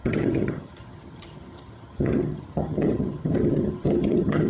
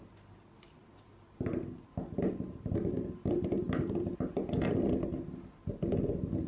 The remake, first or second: first